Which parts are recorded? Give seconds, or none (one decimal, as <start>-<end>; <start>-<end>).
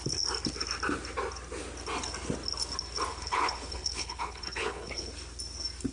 0.0-3.1; 5.0-5.9